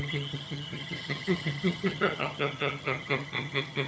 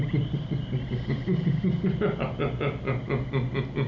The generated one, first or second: first